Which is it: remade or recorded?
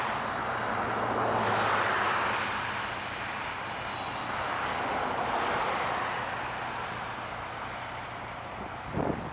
recorded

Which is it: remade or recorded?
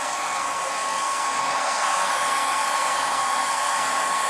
remade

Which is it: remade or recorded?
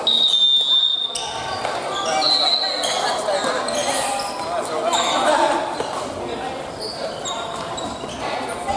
recorded